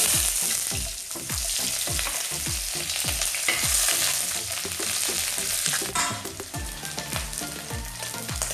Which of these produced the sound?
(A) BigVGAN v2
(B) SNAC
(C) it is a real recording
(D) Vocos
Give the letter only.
C